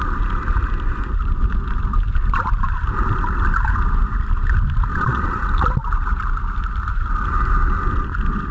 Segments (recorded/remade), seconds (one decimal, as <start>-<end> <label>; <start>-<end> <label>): 0.0-4.9 recorded; 4.9-5.4 remade; 5.4-8.5 recorded